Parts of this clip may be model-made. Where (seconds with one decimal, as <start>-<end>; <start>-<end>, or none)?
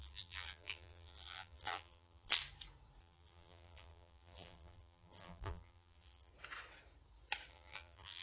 0.0-2.4; 3.0-6.3; 7.5-8.2